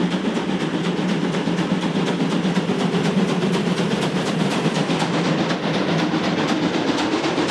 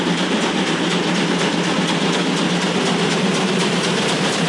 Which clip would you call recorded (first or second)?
second